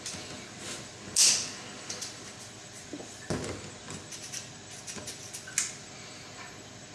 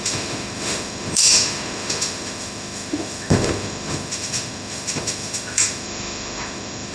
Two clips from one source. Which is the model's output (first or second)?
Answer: second